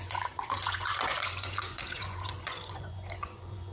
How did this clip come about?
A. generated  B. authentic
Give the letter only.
A